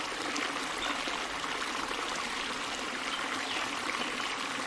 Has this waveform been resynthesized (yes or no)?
no